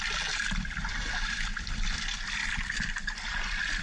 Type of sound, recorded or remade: recorded